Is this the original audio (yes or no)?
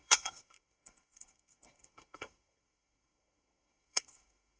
no